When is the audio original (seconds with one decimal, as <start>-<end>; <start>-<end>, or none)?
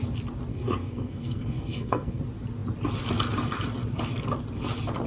0.0-0.5; 2.2-5.1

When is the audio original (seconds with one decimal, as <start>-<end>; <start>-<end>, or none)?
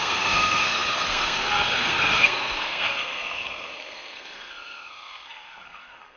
none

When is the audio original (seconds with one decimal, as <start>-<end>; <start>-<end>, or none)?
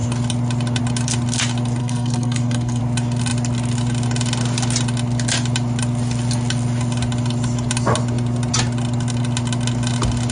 0.0-1.8; 2.8-10.3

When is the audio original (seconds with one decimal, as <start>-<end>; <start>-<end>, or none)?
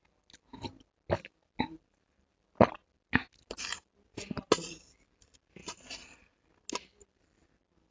0.0-7.9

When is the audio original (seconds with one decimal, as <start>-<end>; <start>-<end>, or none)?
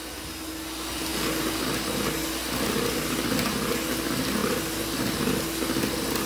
0.0-6.3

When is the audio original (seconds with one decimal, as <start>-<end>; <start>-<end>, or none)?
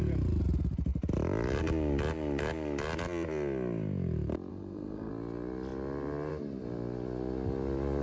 0.0-4.5; 5.1-8.0